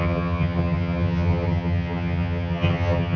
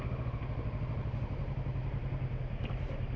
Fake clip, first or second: first